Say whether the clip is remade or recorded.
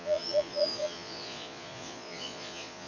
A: remade